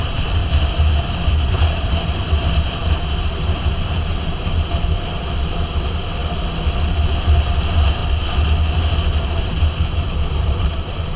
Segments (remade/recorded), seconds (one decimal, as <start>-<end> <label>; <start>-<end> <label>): 0.0-6.2 remade; 6.2-7.3 recorded; 7.3-8.0 remade; 8.0-9.4 recorded; 9.4-11.2 remade